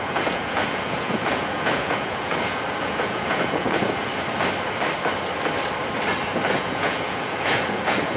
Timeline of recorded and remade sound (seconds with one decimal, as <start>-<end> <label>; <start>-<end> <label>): 0.0-4.1 remade; 4.1-6.6 recorded; 6.6-8.2 remade